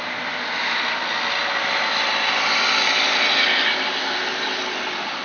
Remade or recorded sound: recorded